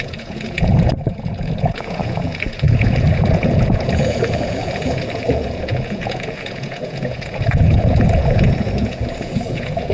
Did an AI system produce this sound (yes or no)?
yes